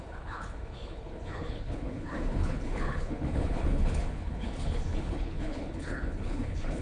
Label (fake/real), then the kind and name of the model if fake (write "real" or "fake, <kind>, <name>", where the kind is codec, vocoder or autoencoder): fake, codec, HILCodec